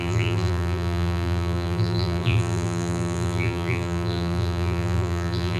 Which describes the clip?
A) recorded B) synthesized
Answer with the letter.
B